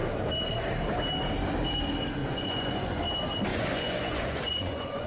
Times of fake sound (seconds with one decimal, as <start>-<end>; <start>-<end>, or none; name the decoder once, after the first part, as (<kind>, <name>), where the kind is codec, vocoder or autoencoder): 2.2-3.0 (vocoder, Vocos); 3.5-5.1